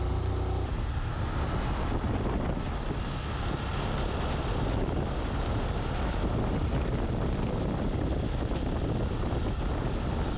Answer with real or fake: real